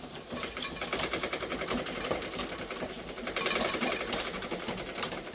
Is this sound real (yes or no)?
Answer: no